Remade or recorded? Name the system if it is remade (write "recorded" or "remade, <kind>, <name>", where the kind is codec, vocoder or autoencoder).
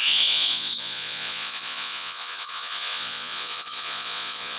remade, vocoder, Vocos